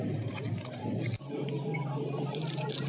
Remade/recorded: recorded